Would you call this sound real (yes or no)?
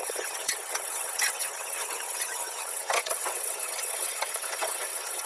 no